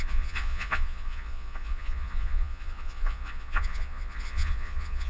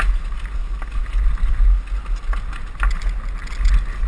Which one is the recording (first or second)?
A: second